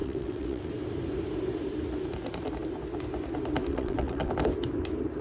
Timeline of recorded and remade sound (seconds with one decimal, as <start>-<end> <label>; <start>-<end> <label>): 0.0-0.7 remade; 0.7-3.7 recorded; 3.7-4.3 remade; 4.3-5.2 recorded